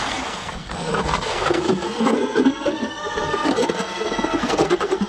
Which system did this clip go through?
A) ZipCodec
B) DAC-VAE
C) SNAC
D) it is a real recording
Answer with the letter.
C